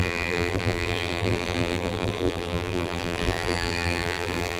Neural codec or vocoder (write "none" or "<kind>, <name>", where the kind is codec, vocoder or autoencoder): vocoder, BigVGAN v2